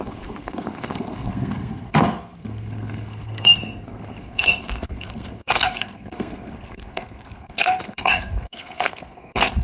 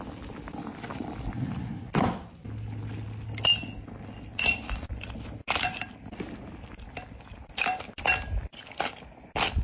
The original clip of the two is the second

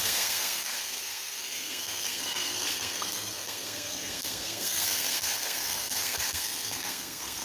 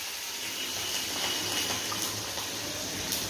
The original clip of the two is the second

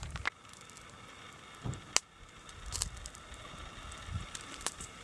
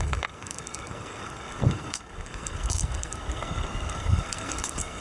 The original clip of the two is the first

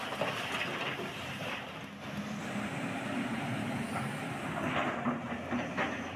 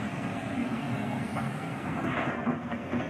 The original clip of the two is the first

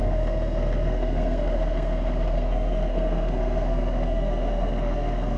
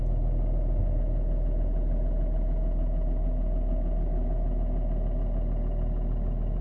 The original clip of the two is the second